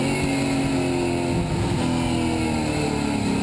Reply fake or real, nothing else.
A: real